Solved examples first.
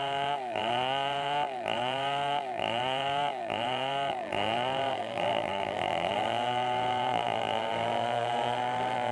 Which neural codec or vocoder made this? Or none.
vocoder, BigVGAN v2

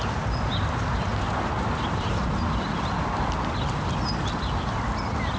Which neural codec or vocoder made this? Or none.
none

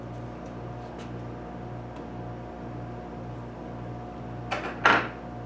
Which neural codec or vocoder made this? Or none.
none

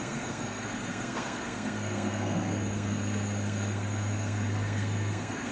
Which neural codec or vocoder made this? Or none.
codec, SNAC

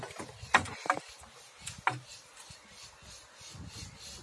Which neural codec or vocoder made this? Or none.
none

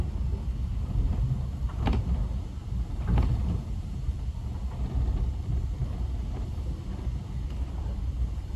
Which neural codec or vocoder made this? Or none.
none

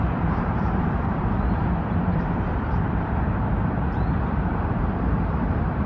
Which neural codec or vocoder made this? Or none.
vocoder, BigVGAN v2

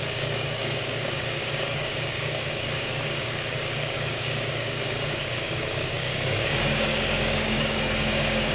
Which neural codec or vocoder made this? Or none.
codec, DAC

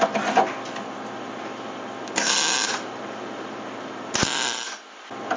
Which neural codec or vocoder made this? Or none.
none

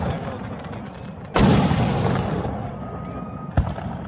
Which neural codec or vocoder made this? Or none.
none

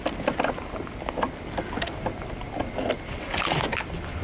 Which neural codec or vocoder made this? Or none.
none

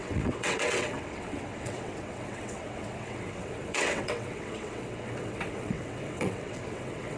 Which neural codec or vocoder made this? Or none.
vocoder, WaveNeXt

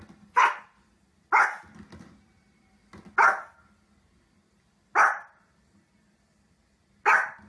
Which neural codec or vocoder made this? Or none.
none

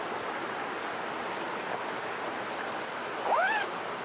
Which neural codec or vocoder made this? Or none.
none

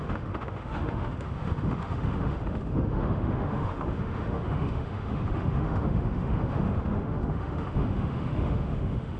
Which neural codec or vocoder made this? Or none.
autoencoder, DAC-VAE